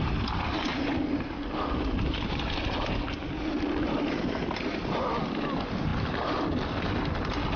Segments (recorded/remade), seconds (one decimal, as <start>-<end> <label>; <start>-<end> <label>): 0.0-7.6 recorded